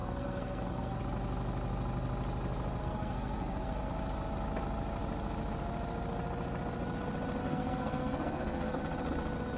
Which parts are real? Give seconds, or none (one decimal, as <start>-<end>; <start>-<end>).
1.0-2.8; 3.9-7.4; 8.8-9.6